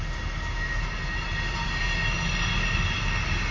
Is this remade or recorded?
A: recorded